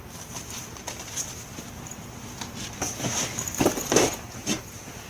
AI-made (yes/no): yes